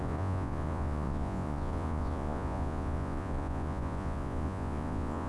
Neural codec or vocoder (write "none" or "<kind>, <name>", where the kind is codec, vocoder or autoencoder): vocoder, Vocos